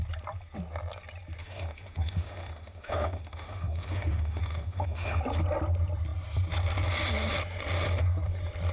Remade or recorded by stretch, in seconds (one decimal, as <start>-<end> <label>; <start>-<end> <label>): 0.0-1.4 recorded; 1.4-5.2 remade; 5.2-8.7 recorded